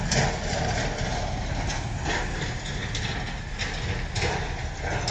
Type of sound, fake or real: real